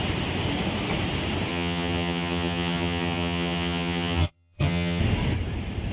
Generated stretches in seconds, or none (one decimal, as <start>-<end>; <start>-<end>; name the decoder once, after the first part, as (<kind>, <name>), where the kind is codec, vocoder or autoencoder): 1.5-5.0 (vocoder, HiFi-GAN)